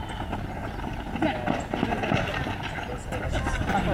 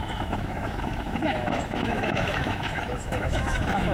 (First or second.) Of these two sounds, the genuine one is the first